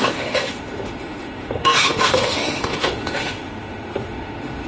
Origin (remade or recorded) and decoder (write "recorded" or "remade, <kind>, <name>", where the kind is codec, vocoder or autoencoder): remade, autoencoder, DAC-VAE